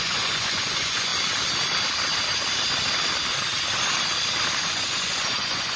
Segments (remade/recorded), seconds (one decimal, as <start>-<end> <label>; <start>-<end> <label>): 0.0-1.1 remade; 1.1-4.6 recorded; 4.6-5.8 remade

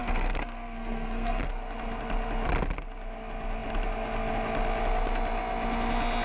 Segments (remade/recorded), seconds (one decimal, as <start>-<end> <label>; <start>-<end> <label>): 0.0-1.5 remade; 1.5-6.2 recorded